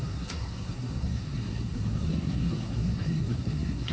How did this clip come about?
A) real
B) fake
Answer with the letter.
B